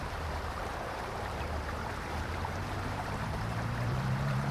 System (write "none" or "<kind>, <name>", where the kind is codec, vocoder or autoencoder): vocoder, BigVGAN v2